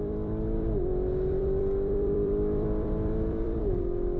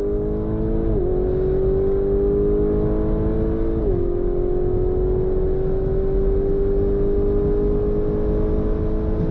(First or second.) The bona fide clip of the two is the second